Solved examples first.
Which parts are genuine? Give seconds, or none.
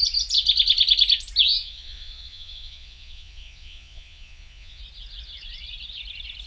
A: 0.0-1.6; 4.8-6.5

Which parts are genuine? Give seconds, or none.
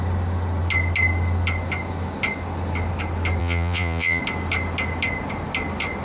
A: 0.0-3.4; 4.2-6.0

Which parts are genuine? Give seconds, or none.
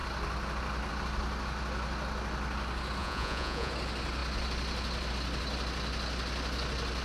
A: 0.0-3.0; 3.7-7.0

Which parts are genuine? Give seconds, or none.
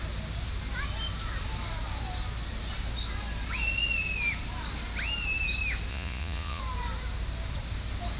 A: 0.0-5.9; 6.6-8.2